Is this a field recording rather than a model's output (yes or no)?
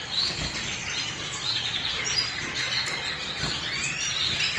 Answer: yes